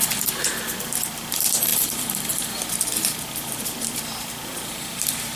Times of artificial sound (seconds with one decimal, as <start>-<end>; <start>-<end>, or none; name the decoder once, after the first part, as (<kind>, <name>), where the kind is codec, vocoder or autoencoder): 0.0-5.4 (vocoder, BigVGAN v2)